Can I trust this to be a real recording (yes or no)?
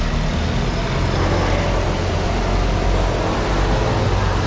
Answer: yes